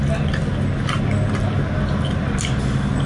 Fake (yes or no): no